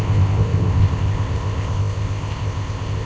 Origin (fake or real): fake